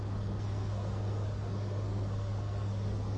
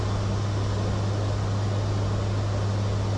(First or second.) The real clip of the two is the second